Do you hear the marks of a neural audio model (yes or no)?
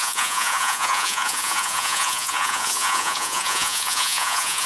yes